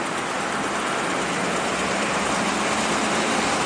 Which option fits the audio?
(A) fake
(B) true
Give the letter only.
B